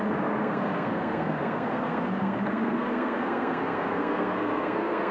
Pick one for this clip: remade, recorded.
remade